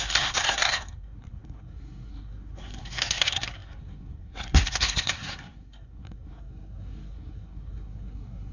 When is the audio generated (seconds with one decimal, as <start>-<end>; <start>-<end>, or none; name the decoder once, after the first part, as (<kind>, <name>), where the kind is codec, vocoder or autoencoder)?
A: 0.0-8.5 (codec, SNAC)